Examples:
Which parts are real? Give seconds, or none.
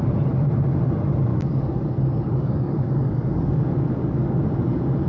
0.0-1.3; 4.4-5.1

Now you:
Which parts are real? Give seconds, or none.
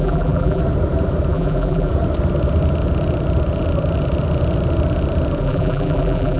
0.6-1.3; 1.9-5.4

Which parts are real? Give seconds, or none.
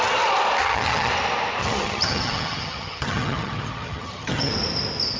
0.0-0.6; 1.1-1.6; 4.5-5.2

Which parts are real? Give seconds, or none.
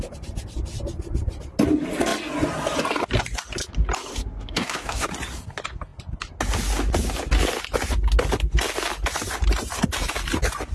0.0-4.1; 5.1-10.7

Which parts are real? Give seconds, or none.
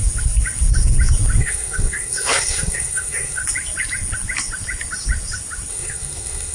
0.0-1.4; 3.4-5.7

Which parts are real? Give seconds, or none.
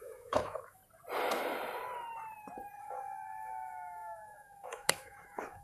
0.8-2.8